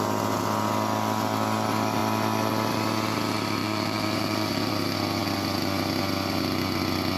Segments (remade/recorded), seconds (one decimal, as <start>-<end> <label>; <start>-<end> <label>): 0.0-3.6 recorded; 3.6-4.7 remade; 4.7-7.2 recorded